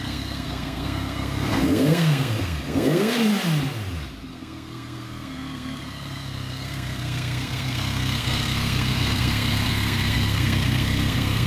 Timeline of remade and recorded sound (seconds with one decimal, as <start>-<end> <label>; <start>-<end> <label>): 0.0-3.3 remade; 3.3-4.3 recorded; 4.3-11.5 remade